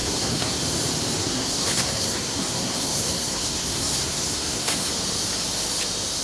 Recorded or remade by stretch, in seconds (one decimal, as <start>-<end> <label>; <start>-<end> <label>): 0.0-0.6 remade; 0.6-1.2 recorded; 1.2-4.9 remade; 4.9-6.2 recorded